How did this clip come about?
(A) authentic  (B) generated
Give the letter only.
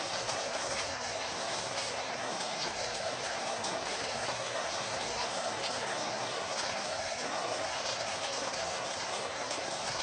B